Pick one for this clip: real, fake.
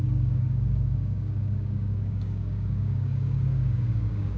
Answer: fake